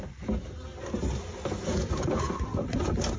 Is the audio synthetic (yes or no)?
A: no